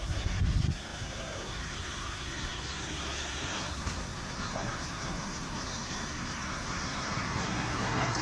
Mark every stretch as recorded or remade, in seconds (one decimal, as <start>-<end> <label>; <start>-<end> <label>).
0.0-8.2 remade